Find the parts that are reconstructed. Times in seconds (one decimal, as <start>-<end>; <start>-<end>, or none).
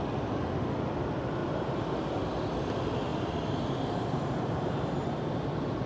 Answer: 1.4-1.9; 3.1-5.3